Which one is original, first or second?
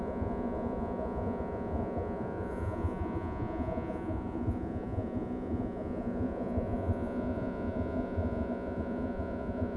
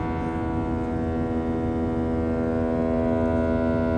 second